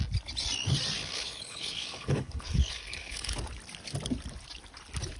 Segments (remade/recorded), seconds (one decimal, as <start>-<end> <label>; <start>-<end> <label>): 0.0-1.0 recorded; 1.0-3.3 remade; 3.3-5.2 recorded